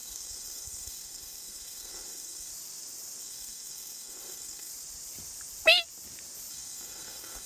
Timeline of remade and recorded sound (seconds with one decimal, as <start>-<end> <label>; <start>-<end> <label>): 0.0-2.5 remade; 2.5-3.2 recorded; 3.2-4.7 remade; 4.7-6.5 recorded; 6.5-7.5 remade